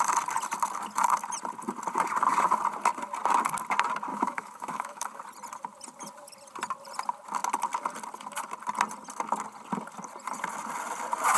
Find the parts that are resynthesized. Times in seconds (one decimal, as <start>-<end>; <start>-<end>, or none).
4.1-5.2